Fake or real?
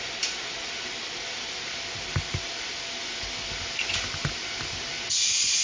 real